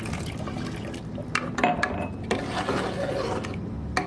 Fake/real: real